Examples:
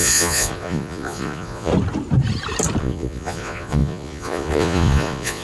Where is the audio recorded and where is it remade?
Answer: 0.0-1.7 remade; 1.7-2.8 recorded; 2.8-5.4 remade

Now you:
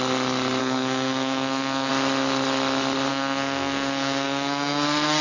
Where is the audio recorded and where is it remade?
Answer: 0.0-0.6 recorded; 0.6-1.9 remade; 1.9-3.1 recorded; 3.1-5.2 remade

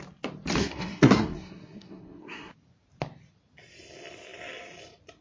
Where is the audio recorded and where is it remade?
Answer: 0.0-0.6 recorded; 0.6-2.5 remade; 2.5-5.2 recorded

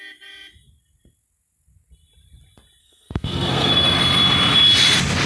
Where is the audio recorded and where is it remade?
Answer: 0.0-2.8 recorded; 2.8-3.7 remade; 3.7-5.3 recorded

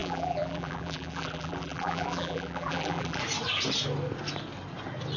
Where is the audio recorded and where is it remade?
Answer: 0.0-3.2 remade; 3.2-5.2 recorded

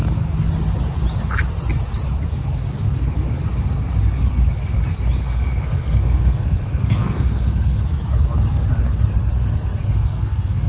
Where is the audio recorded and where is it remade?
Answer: 0.0-5.2 recorded; 5.2-7.8 remade; 7.8-9.1 recorded; 9.1-10.7 remade

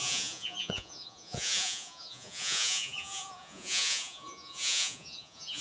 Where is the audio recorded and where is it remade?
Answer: 0.0-5.6 remade

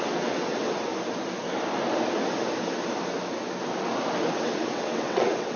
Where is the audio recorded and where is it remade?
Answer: 0.0-0.9 remade; 0.9-4.3 recorded; 4.3-5.6 remade